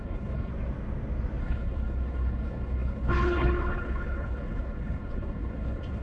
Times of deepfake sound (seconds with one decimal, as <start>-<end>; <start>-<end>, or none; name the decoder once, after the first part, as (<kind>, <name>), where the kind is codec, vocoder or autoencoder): 0.0-0.5 (codec, HILCodec); 1.4-6.0